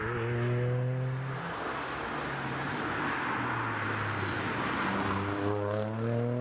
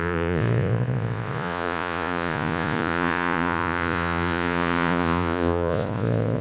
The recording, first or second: first